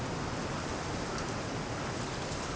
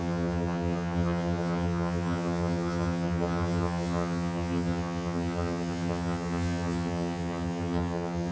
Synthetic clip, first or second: second